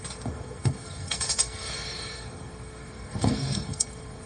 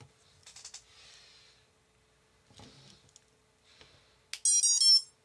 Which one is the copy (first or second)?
first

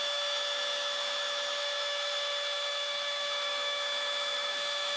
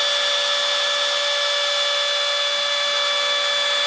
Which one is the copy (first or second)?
first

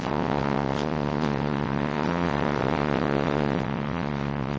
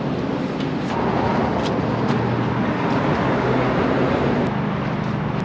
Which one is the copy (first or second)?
first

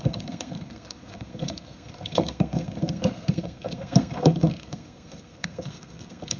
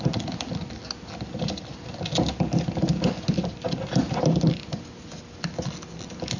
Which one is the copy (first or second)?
first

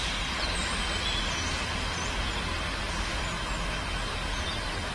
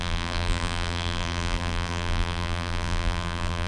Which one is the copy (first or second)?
second